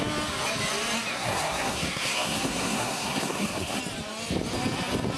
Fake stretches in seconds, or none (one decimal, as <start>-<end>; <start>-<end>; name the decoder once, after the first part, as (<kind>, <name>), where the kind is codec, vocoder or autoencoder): 1.1-3.8 (codec, SNAC)